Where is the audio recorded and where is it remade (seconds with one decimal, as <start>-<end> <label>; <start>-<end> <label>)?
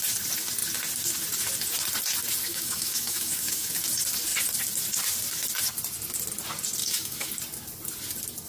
0.0-2.5 recorded; 2.5-3.7 remade; 3.7-6.8 recorded; 6.8-7.3 remade; 7.3-8.5 recorded